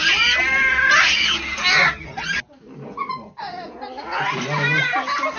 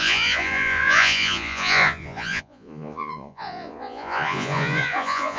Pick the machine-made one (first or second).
second